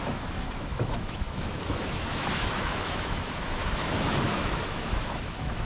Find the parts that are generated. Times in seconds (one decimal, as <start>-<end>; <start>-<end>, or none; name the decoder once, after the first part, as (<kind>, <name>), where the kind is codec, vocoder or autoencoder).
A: 0.0-5.7 (autoencoder, DAC-VAE)